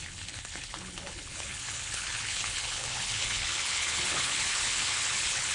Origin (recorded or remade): remade